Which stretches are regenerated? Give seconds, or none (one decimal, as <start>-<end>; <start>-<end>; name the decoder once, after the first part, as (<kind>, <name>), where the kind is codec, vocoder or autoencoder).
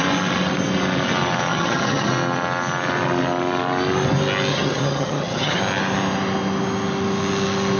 1.5-2.1 (vocoder, HiFi-GAN); 4.5-5.6